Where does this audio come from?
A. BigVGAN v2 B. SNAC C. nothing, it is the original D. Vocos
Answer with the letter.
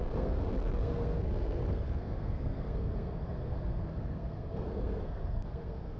B